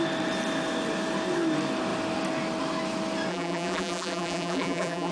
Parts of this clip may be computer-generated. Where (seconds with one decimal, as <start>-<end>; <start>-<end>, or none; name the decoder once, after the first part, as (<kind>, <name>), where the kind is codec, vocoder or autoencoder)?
3.3-5.1 (vocoder, BigVGAN v2)